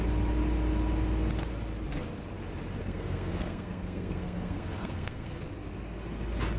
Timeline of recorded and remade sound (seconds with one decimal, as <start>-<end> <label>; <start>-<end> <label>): 0.0-2.8 recorded; 2.8-5.4 remade; 5.4-6.6 recorded